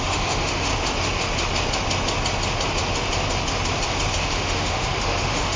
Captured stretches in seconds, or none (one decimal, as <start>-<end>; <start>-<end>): 0.7-4.1